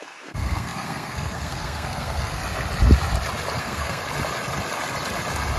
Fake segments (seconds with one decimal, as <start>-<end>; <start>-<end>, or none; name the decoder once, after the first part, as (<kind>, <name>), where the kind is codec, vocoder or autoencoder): 0.0-2.4 (codec, SNAC); 3.6-4.0